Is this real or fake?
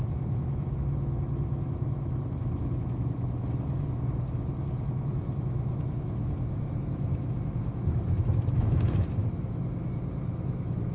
fake